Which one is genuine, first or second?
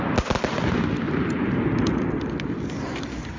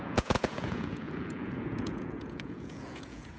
first